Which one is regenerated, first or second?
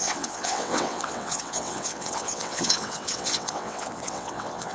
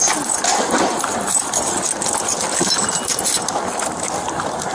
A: first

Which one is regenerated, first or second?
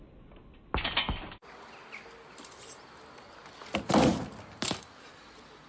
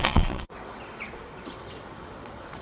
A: second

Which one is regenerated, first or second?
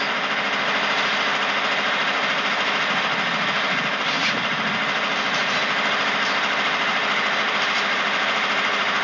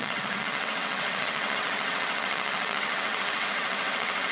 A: second